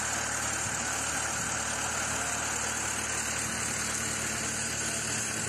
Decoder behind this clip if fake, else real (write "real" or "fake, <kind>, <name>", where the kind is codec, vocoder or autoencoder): real